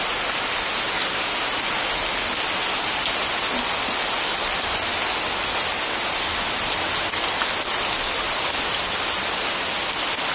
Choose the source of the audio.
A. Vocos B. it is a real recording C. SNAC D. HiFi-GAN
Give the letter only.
B